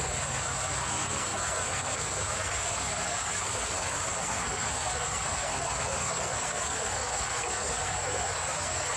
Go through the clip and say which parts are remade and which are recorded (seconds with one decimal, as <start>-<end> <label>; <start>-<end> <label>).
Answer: 0.0-9.0 remade